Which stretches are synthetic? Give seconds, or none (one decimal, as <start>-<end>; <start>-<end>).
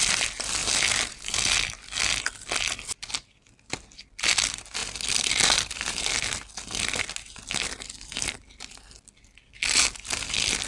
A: none